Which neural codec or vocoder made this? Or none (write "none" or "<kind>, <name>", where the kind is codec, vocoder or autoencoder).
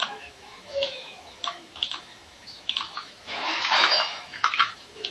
autoencoder, DAC-VAE